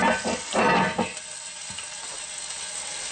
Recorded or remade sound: recorded